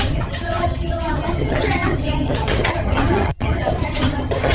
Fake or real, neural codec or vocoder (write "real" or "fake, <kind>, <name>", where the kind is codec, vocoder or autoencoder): fake, vocoder, HiFi-GAN